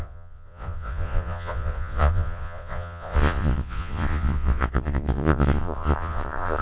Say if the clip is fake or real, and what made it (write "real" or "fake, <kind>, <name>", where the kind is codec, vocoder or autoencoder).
fake, vocoder, Vocos